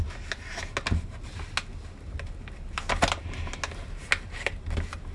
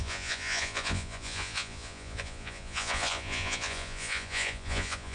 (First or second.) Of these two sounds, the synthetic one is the second